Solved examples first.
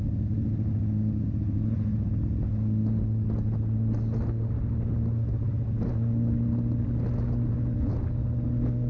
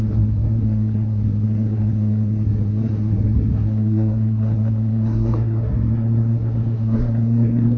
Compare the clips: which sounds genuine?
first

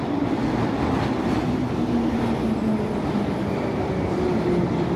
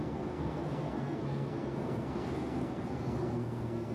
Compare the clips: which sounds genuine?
first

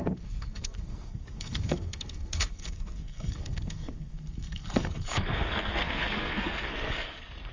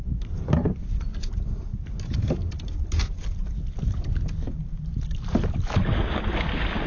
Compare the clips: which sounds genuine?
second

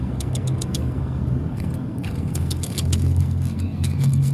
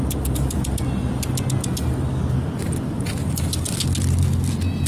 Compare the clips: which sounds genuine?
second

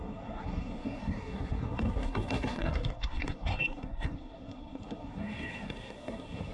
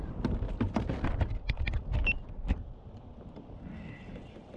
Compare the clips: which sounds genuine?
second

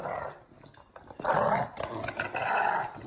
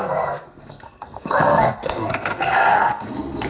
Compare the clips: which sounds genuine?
first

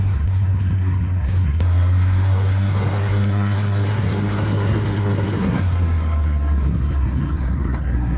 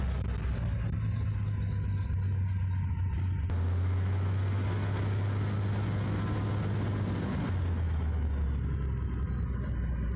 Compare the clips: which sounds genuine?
second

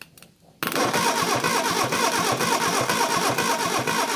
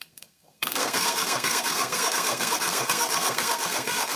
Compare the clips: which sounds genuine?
first